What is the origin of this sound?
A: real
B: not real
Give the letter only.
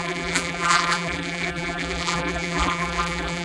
B